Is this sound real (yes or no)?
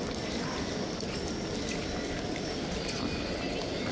yes